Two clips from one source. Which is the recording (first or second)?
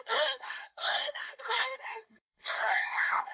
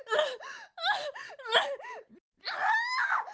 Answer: second